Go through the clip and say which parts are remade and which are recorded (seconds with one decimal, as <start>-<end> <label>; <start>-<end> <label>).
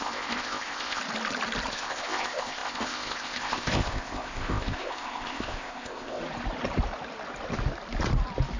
0.0-1.0 remade; 1.0-1.7 recorded; 1.7-6.2 remade; 6.2-8.6 recorded